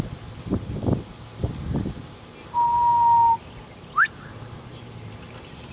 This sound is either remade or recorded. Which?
recorded